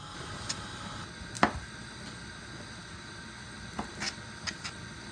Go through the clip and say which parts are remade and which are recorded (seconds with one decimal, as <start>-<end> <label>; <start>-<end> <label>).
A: 0.0-5.1 recorded